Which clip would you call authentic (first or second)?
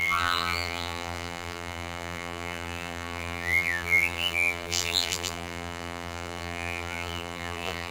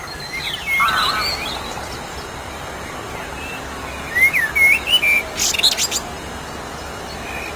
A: second